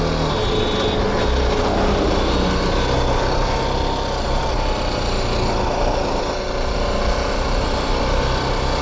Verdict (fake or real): real